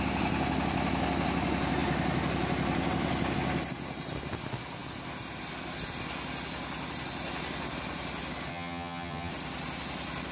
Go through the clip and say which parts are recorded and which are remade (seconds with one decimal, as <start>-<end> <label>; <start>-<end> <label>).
0.0-8.5 recorded; 8.5-9.3 remade; 9.3-10.3 recorded